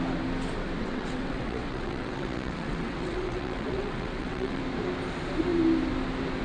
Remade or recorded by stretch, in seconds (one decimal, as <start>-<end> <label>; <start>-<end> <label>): 0.0-0.8 recorded; 0.8-4.6 remade; 4.6-6.4 recorded